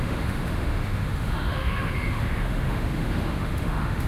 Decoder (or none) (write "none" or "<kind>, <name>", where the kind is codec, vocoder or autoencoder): autoencoder, DAC-VAE